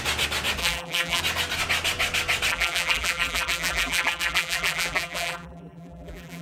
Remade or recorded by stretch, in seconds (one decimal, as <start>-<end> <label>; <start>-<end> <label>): 0.0-0.6 recorded; 0.6-1.2 remade; 1.2-2.5 recorded; 2.5-6.4 remade